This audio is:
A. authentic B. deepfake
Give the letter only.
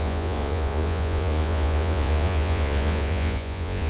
B